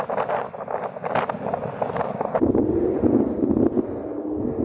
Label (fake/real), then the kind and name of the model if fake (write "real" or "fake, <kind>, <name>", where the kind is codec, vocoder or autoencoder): real